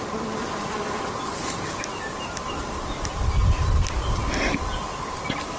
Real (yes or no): yes